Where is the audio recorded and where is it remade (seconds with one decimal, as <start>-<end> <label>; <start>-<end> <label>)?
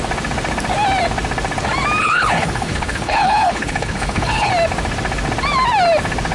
0.0-2.0 recorded; 2.0-4.5 remade; 4.5-6.3 recorded